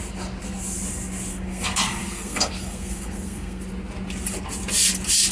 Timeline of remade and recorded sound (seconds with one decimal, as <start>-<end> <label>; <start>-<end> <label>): 0.0-1.3 recorded; 1.3-3.6 remade; 3.6-5.3 recorded